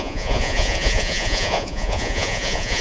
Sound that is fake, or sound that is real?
fake